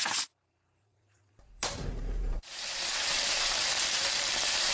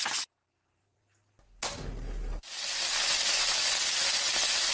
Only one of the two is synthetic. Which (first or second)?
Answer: first